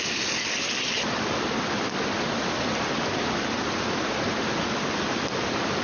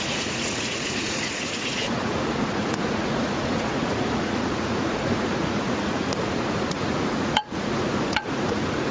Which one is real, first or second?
first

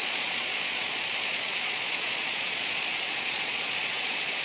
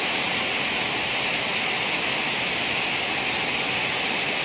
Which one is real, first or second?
second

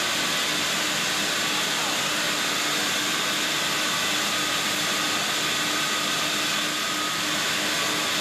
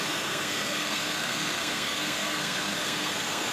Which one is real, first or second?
first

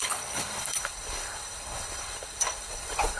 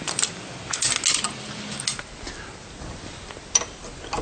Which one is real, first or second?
second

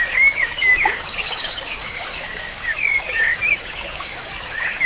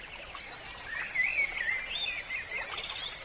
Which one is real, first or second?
second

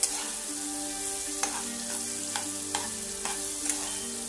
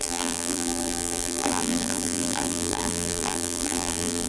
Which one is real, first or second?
first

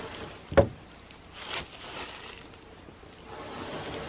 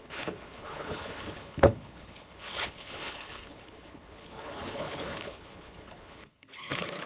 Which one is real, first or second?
first